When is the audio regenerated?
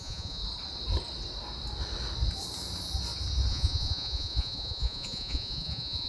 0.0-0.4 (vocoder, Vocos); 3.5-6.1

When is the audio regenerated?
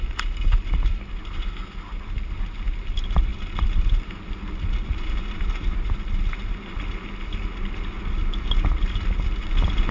none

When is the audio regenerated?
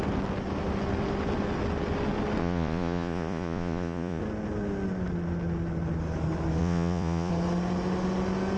2.4-4.2 (vocoder, Vocos); 6.6-7.3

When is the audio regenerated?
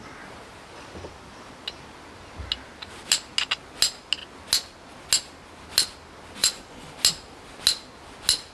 6.4-6.9 (vocoder, Vocos)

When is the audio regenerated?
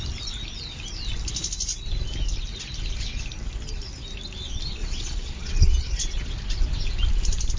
4.8-6.4 (vocoder, Vocos)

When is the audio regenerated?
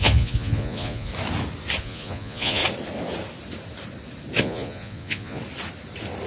0.0-1.1 (vocoder, Vocos); 1.8-2.6; 4.4-5.4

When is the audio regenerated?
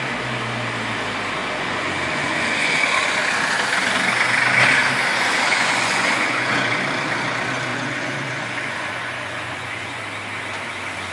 1.4-3.2 (vocoder, Vocos); 5.1-6.8; 7.7-10.0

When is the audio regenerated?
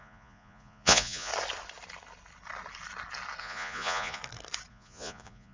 0.0-1.3 (vocoder, Vocos); 3.4-4.2; 4.7-5.5